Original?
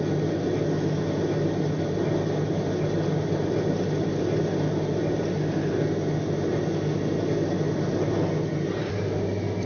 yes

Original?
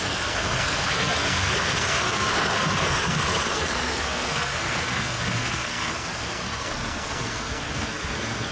no